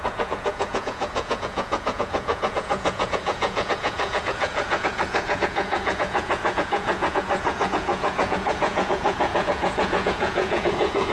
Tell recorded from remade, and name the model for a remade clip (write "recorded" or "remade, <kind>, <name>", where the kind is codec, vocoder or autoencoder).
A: remade, vocoder, Vocos